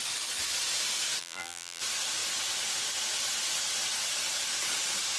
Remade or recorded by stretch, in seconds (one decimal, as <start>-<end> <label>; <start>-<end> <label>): 0.0-1.2 recorded; 1.2-1.8 remade; 1.8-5.2 recorded